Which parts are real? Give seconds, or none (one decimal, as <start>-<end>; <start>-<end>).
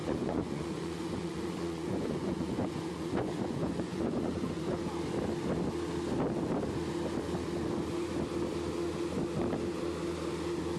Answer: 4.8-10.8